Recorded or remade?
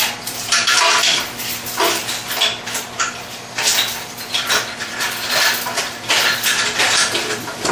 remade